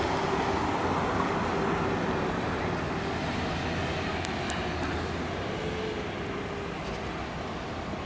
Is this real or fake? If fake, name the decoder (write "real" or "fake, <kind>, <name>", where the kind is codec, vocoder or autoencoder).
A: real